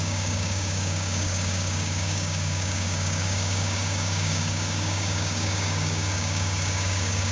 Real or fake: fake